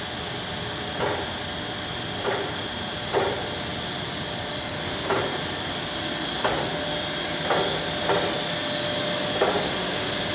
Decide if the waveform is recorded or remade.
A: recorded